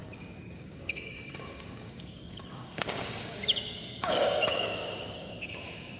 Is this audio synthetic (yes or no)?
yes